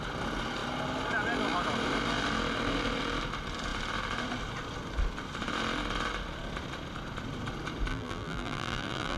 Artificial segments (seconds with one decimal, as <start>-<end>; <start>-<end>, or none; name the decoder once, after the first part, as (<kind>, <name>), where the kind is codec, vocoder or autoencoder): 7.9-9.2 (vocoder, BigVGAN v2)